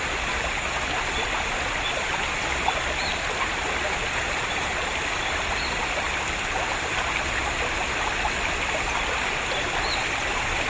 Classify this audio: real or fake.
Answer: real